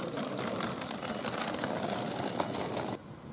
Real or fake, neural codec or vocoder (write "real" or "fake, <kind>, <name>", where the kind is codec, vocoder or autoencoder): real